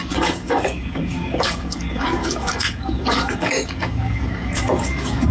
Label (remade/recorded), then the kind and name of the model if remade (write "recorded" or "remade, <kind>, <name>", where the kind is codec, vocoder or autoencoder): remade, codec, DAC